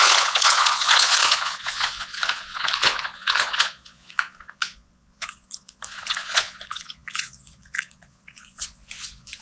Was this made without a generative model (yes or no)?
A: no